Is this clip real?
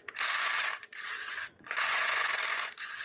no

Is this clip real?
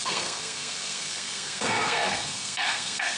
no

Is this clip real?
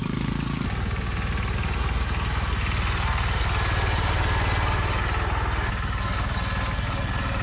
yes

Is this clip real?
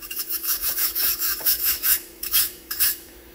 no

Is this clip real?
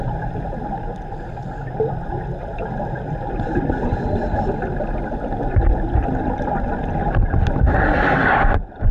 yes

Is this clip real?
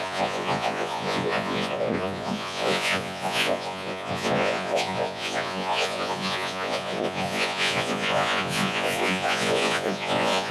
no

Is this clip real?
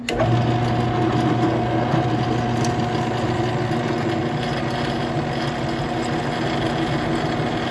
yes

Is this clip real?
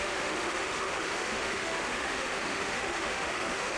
no